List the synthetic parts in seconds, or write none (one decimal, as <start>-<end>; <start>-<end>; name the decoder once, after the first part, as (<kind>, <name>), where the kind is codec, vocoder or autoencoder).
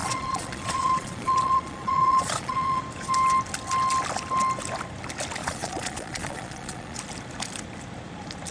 0.0-2.8 (vocoder, Vocos); 5.4-7.0